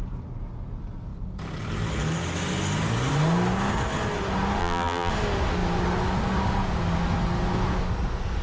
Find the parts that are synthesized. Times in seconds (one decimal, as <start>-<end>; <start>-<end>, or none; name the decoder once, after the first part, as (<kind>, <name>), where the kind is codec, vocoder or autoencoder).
4.6-5.1 (vocoder, BigVGAN v2)